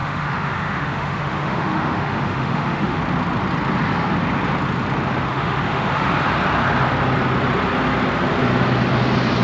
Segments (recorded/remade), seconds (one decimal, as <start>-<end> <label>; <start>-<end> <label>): 0.0-3.0 remade; 3.0-5.3 recorded; 5.3-6.1 remade; 6.1-9.4 recorded

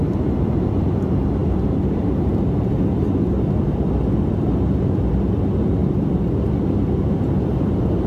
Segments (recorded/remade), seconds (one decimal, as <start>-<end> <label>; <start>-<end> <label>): 0.0-5.8 recorded; 5.8-7.2 remade; 7.2-8.1 recorded

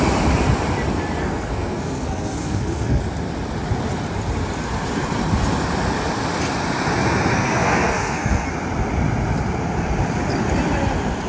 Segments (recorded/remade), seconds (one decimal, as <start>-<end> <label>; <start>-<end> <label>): 0.0-1.2 recorded; 1.2-3.0 remade; 3.0-7.3 recorded; 7.3-8.5 remade; 8.5-11.3 recorded

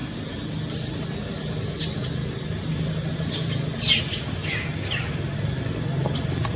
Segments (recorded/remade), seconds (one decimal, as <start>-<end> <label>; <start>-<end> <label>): 0.0-6.6 recorded

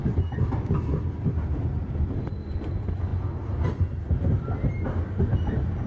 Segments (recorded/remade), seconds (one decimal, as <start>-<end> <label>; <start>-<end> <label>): 0.0-5.9 recorded

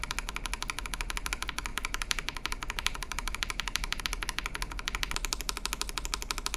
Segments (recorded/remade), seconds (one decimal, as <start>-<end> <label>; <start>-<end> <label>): 0.0-1.7 recorded; 1.7-4.0 remade; 4.0-6.6 recorded